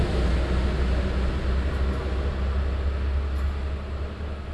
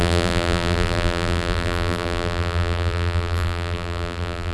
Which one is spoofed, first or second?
second